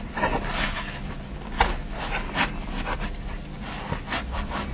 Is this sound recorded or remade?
recorded